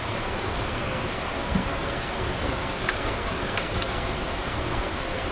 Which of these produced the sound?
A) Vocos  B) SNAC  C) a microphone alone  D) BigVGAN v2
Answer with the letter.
B